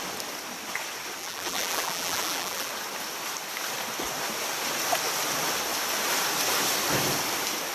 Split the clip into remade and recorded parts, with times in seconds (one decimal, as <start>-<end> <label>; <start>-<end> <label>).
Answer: 0.0-1.2 recorded; 1.2-2.7 remade; 2.7-7.7 recorded

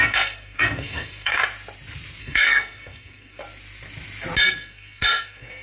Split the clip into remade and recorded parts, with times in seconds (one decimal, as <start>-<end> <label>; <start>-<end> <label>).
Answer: 0.0-1.4 remade; 1.4-2.2 recorded; 2.2-3.4 remade; 3.4-4.4 recorded; 4.4-5.6 remade

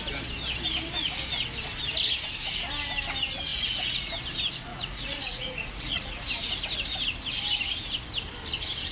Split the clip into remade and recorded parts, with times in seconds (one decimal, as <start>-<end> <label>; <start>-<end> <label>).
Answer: 0.0-3.5 recorded; 3.5-4.1 remade; 4.1-4.7 recorded; 4.7-6.3 remade; 6.3-8.9 recorded

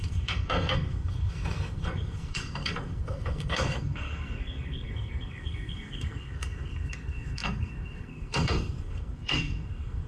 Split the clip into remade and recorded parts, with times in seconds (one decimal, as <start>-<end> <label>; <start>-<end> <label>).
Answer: 0.0-10.1 remade